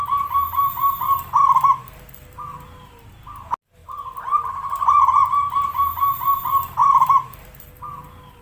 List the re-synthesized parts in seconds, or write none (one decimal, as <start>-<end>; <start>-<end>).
6.8-7.7